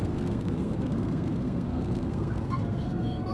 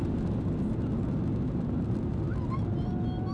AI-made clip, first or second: first